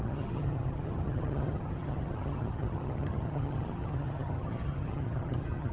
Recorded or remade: remade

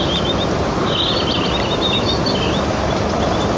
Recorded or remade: recorded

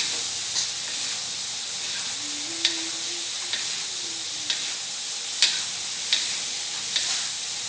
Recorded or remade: recorded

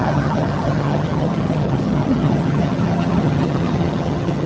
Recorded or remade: remade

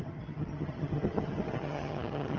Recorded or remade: remade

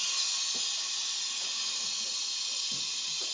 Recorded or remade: recorded